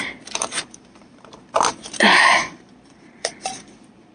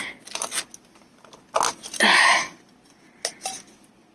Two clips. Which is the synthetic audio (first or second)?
first